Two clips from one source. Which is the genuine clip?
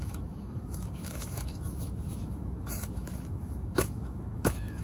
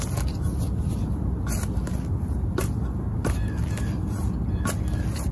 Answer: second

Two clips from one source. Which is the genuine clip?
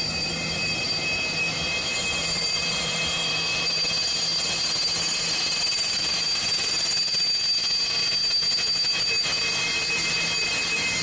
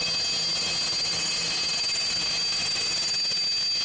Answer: second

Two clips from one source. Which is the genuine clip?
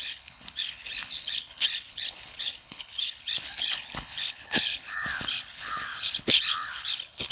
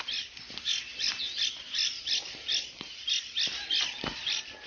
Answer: second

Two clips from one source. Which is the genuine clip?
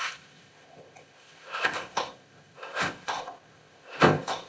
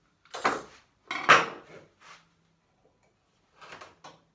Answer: second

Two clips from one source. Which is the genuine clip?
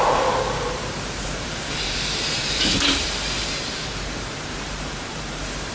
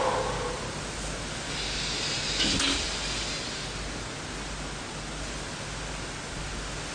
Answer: second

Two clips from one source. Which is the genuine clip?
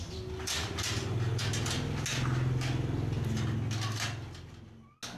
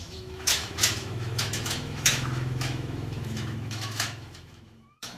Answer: first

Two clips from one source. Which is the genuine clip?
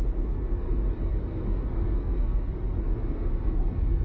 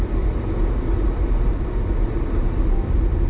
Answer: second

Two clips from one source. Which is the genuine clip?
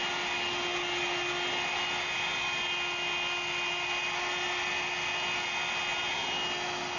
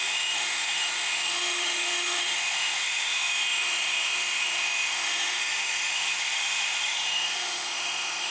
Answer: first